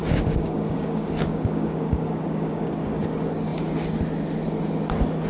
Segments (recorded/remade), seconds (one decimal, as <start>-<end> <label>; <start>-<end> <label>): 0.0-3.0 remade; 3.0-5.3 recorded

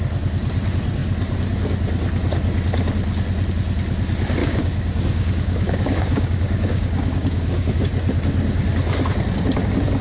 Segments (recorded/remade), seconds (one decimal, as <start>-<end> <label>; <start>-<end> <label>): 0.0-4.4 recorded; 4.4-7.8 remade; 7.8-10.0 recorded

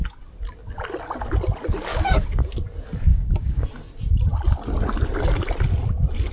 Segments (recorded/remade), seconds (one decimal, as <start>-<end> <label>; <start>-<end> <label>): 0.0-1.9 recorded; 1.9-2.5 remade; 2.5-3.1 recorded; 3.1-3.6 remade; 3.6-6.3 recorded

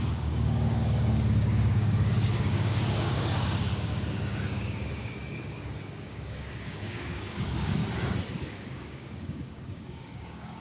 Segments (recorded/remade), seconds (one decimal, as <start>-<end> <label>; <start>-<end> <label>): 0.0-7.8 remade; 7.8-8.4 recorded; 8.4-10.6 remade

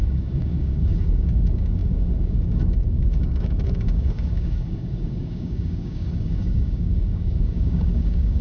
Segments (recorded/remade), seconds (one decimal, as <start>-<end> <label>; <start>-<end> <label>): 0.0-8.4 remade

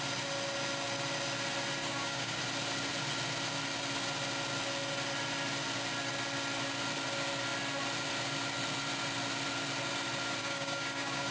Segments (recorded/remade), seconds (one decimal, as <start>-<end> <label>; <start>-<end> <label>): 0.0-1.8 recorded; 1.8-2.4 remade; 2.4-10.4 recorded; 10.4-11.3 remade